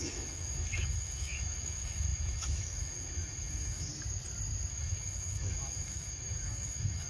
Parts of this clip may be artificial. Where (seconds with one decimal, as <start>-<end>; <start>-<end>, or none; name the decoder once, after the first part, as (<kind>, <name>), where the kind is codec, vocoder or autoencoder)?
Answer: 0.0-3.9 (autoencoder, DAC-VAE); 4.7-7.1